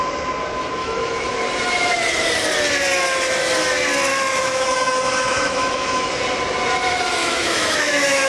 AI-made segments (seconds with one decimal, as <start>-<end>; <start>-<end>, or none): 0.8-1.3; 4.1-6.1; 7.2-8.3